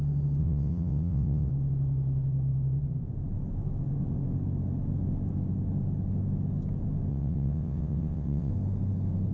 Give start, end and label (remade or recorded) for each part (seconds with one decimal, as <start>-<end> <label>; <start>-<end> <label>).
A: 0.0-0.4 recorded; 0.4-1.5 remade; 1.5-7.1 recorded; 7.1-8.5 remade; 8.5-9.3 recorded